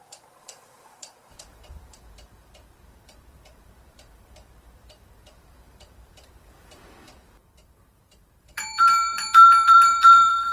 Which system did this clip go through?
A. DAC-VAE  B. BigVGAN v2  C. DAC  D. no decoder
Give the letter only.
B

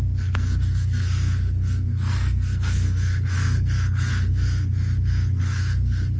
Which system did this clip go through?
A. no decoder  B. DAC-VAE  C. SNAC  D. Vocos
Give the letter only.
C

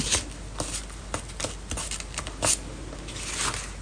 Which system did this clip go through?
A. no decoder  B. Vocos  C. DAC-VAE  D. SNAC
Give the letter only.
A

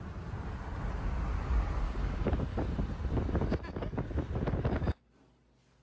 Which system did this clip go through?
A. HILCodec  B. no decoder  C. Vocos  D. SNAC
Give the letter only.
B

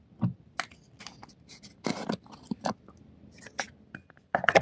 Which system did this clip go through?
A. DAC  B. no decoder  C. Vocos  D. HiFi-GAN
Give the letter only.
B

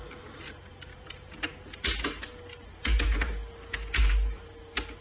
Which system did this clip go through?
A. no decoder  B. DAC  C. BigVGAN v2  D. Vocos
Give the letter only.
A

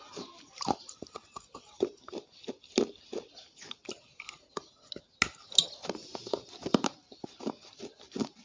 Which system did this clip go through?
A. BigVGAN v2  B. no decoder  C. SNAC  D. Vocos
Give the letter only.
B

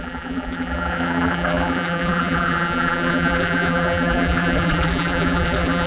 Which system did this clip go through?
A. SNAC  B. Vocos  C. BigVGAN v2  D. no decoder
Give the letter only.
C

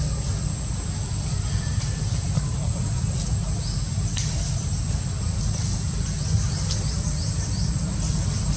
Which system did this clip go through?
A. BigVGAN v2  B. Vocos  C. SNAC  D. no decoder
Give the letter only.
D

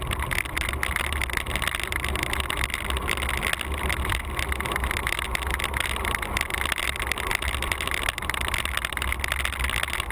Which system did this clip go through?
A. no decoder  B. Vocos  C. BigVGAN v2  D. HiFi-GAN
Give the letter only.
A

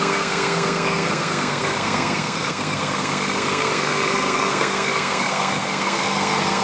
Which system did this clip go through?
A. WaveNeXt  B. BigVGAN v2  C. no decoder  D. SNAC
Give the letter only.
D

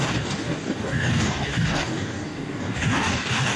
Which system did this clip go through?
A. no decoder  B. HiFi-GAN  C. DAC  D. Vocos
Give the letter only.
C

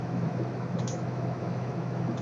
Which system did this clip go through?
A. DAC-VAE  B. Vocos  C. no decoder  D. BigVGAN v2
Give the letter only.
A